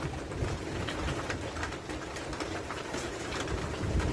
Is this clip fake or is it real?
fake